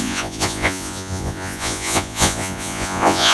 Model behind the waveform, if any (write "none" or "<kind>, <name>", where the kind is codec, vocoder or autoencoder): vocoder, Vocos